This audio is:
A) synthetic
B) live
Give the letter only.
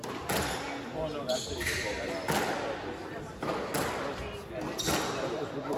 B